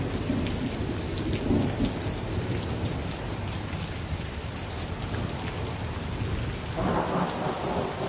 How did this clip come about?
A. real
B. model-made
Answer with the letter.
A